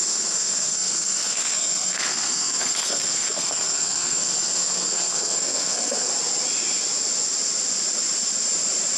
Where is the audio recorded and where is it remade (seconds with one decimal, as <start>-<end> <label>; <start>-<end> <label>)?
0.0-6.1 remade; 6.1-9.0 recorded